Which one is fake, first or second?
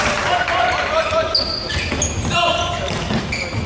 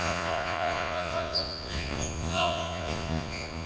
second